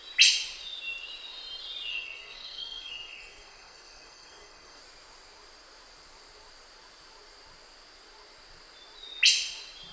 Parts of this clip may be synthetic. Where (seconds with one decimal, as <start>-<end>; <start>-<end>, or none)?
1.9-4.8